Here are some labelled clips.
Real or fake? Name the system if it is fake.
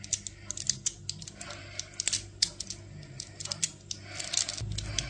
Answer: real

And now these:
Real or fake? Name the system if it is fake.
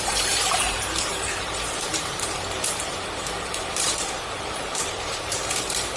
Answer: fake, vocoder, BigVGAN v2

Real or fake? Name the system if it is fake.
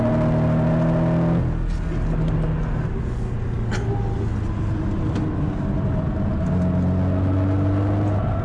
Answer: real